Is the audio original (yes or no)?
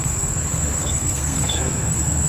no